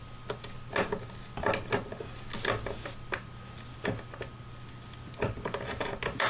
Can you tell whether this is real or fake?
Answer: real